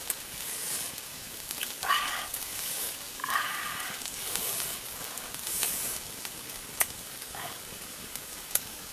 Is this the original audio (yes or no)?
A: no